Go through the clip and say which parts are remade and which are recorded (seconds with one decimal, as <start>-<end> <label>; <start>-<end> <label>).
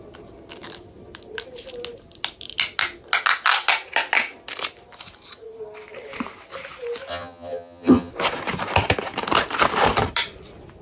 0.0-7.1 recorded; 7.1-8.1 remade; 8.1-10.8 recorded